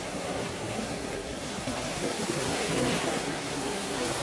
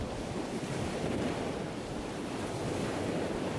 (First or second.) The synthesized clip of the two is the first